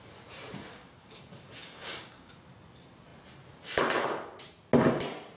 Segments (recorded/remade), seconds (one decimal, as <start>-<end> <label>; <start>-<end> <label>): 0.0-0.7 recorded; 0.7-1.2 remade; 1.2-1.6 recorded; 1.6-2.3 remade; 2.3-5.4 recorded